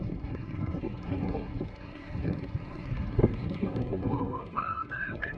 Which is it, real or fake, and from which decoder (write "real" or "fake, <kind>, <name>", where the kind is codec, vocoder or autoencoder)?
fake, codec, SNAC